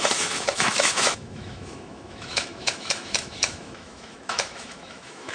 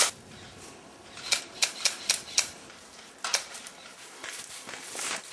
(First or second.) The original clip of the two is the second